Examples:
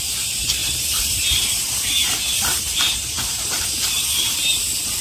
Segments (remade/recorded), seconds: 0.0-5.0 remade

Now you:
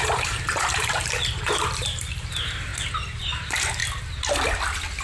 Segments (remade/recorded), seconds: 0.0-2.7 remade; 2.7-3.2 recorded; 3.2-3.8 remade; 3.8-5.0 recorded

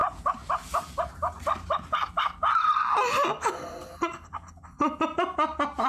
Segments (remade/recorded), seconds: 0.0-5.9 recorded

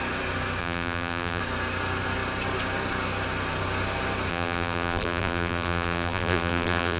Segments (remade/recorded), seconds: 0.0-0.6 recorded; 0.6-1.4 remade; 1.4-4.3 recorded; 4.3-7.0 remade

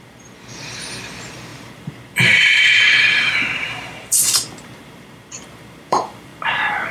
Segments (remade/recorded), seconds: 0.0-6.9 remade